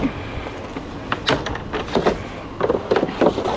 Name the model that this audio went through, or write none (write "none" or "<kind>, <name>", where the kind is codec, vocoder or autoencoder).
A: none